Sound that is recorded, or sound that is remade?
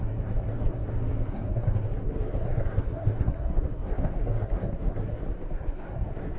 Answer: remade